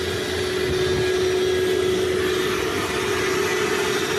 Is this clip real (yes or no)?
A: yes